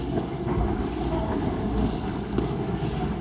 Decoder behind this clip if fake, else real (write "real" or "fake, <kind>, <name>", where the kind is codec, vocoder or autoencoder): fake, codec, DAC